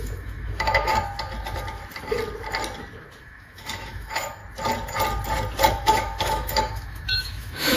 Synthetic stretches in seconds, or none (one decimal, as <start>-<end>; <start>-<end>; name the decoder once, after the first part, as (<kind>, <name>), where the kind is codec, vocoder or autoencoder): 0.0-0.9 (autoencoder, DAC-VAE); 3.2-4.4; 5.7-7.8